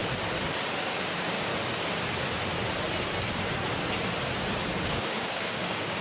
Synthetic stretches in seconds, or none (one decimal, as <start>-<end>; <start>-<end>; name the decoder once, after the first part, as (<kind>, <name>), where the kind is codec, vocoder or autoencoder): 0.8-1.5 (codec, DAC); 4.9-6.0